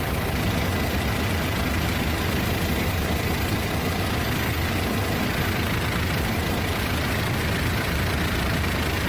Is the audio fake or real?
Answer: real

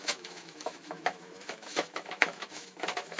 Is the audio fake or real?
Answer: fake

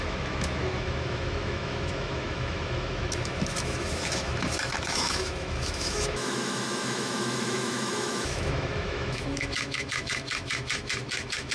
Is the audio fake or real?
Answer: fake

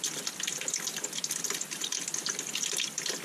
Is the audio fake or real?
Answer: fake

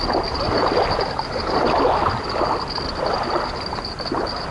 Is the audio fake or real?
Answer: real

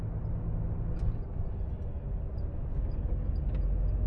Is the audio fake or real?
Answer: real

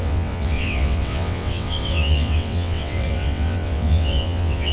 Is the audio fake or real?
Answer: fake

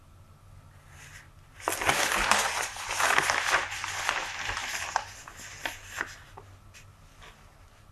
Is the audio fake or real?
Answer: real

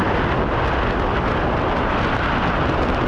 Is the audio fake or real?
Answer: real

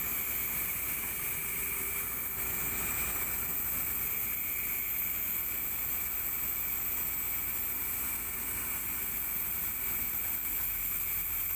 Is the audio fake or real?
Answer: real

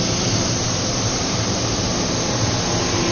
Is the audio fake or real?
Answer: fake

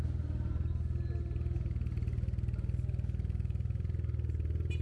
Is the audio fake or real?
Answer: real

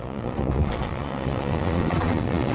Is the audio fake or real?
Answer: fake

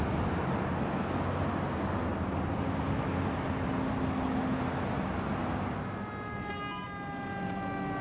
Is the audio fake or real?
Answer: real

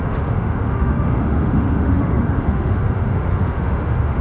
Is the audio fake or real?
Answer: fake